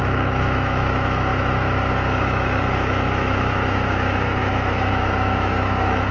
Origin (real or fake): fake